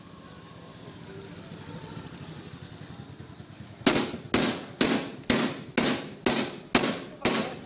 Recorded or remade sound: recorded